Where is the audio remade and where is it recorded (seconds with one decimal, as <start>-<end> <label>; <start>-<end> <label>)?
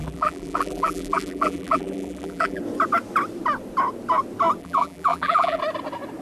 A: 0.0-2.6 remade; 2.6-4.6 recorded; 4.6-5.6 remade; 5.6-6.2 recorded